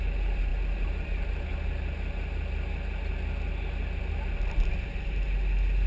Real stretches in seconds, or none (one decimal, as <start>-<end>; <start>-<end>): 0.0-5.9